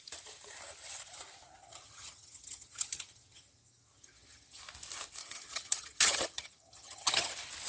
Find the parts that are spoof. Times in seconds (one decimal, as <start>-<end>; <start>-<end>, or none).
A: 1.6-4.6; 5.2-7.3